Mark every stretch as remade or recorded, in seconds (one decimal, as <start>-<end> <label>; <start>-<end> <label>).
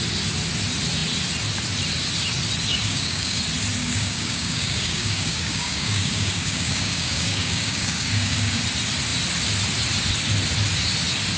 0.0-2.7 recorded; 2.7-3.4 remade; 3.4-3.8 recorded; 3.8-8.6 remade; 8.6-11.4 recorded